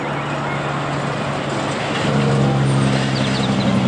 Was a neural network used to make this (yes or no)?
no